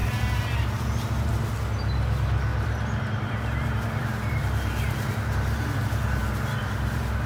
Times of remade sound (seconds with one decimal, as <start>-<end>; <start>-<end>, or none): 0.0-1.3; 2.5-5.8; 6.2-7.3